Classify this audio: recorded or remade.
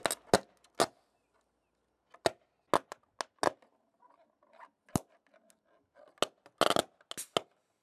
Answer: recorded